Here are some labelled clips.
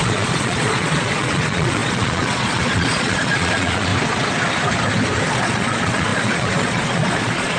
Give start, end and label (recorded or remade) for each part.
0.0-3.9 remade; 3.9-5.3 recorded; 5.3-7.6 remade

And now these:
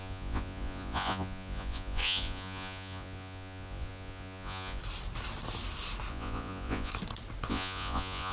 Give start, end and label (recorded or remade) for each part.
0.0-4.8 remade; 4.8-6.1 recorded; 6.1-6.9 remade; 6.9-7.5 recorded; 7.5-8.3 remade

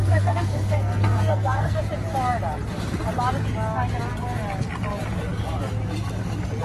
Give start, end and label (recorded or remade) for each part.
0.0-1.8 remade; 1.8-6.6 recorded

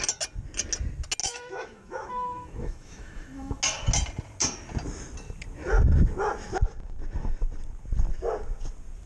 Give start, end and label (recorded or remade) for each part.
0.0-1.2 recorded; 1.2-3.6 remade; 3.6-9.1 recorded

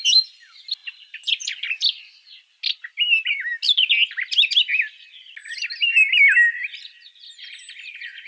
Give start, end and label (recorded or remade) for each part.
0.0-8.3 recorded